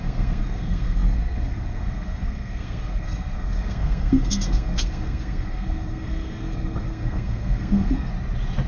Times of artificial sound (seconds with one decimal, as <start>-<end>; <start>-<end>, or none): 0.0-8.1